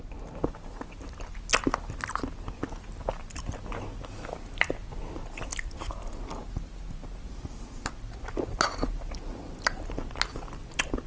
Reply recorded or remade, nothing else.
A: recorded